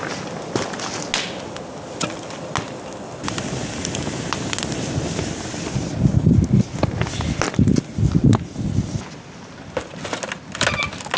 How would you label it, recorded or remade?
recorded